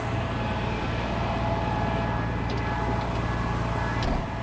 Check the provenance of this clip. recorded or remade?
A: recorded